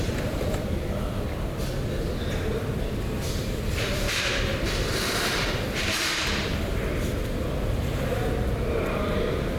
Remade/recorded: remade